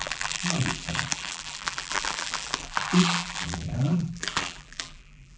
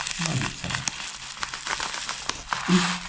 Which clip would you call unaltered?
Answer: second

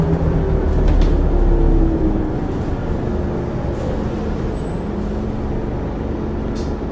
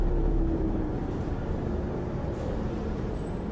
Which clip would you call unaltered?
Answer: first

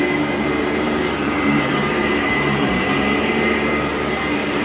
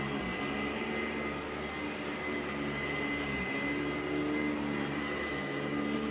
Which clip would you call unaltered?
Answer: second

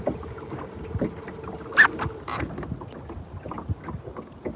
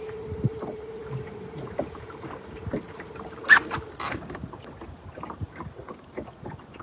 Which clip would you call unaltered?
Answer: first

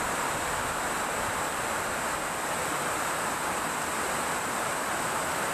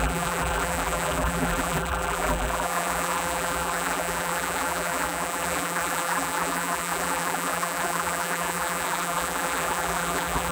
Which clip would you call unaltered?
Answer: first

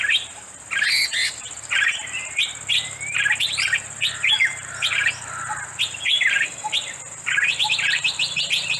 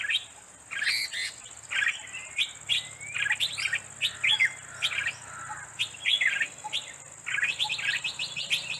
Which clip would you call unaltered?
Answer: second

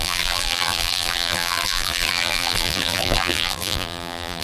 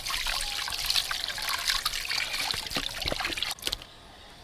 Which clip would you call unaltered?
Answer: second